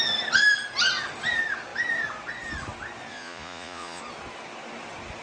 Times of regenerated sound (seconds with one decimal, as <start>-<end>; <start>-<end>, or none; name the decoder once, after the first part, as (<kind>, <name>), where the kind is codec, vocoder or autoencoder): 3.1-4.0 (vocoder, Vocos)